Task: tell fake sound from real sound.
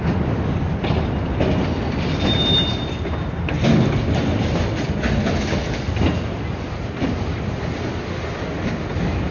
real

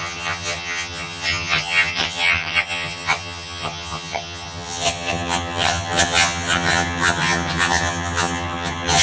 fake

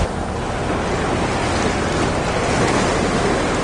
real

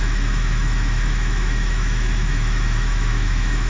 fake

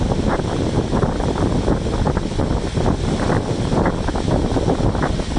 real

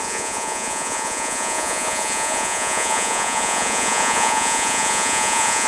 fake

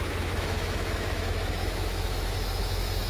fake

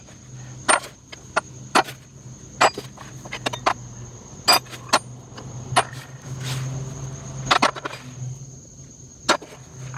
real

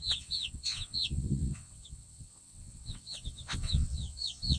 fake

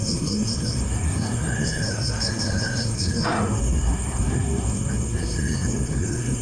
fake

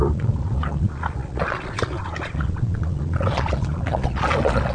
fake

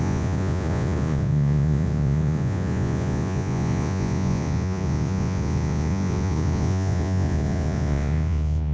fake